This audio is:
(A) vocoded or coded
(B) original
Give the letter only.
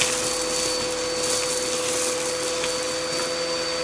B